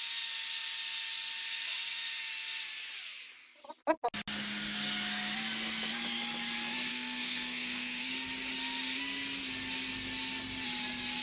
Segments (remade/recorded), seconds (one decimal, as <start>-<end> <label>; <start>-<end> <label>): 0.0-6.9 recorded; 6.9-8.1 remade; 8.1-11.2 recorded